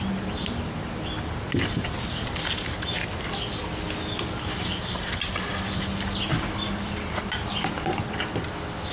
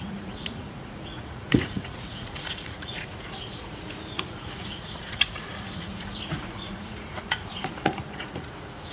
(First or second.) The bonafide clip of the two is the first